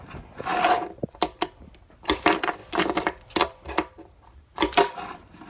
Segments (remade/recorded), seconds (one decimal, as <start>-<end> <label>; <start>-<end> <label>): 0.0-5.5 recorded